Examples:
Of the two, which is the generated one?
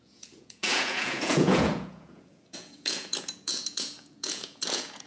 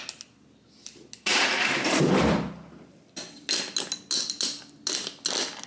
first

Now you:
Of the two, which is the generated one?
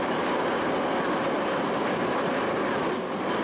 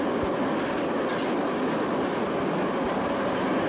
first